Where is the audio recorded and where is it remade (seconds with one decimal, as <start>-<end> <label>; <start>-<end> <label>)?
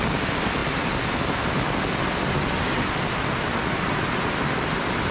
0.0-5.1 recorded